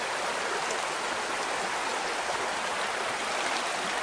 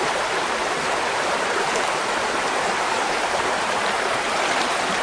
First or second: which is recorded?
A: first